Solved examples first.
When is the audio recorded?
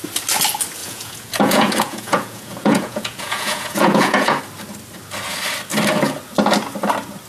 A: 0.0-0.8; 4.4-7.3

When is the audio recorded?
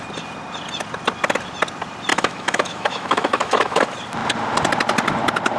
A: 0.0-2.1; 3.8-5.6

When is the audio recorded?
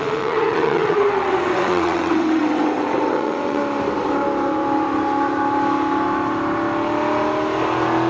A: 3.6-8.1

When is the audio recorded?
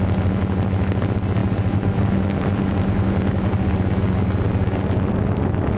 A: 0.0-5.8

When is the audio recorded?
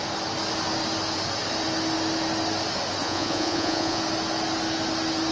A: 0.0-3.0; 4.0-5.3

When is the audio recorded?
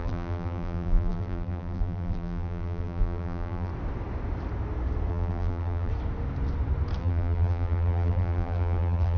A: 3.7-5.1; 5.9-7.0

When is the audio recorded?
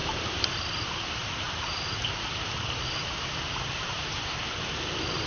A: 0.5-1.2; 4.4-5.3